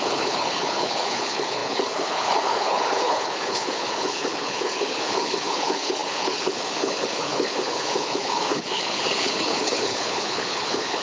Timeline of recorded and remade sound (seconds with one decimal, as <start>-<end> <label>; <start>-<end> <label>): 0.0-11.0 remade